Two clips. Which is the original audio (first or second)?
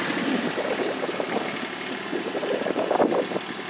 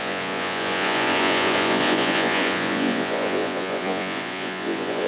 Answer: first